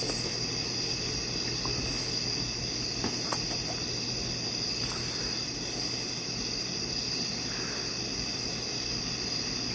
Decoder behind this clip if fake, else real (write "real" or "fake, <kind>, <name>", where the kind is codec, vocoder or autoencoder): real